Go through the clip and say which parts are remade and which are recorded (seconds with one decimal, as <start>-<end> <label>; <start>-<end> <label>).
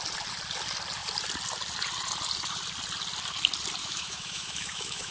0.0-3.8 recorded; 3.8-5.1 remade